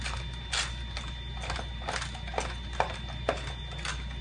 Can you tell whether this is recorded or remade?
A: recorded